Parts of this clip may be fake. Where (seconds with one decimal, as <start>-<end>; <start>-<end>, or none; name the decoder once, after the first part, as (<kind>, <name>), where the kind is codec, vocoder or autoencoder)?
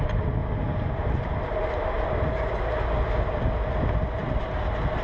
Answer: none